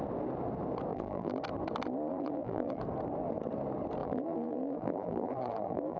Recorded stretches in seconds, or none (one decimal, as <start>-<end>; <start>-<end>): 0.0-0.9; 1.4-2.1; 2.8-4.0